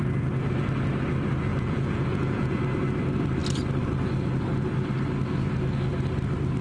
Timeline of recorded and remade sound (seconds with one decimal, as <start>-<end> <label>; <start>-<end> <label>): 0.0-1.5 recorded; 1.5-2.6 remade; 2.6-6.6 recorded